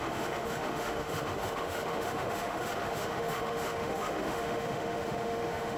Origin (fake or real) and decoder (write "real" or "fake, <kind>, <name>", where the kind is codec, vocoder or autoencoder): fake, autoencoder, DAC-VAE